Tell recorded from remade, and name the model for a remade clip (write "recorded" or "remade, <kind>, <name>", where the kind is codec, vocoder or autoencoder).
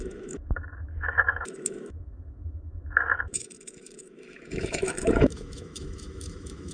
remade, autoencoder, DAC-VAE